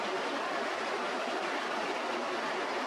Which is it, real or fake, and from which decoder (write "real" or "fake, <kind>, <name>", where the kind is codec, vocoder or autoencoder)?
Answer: real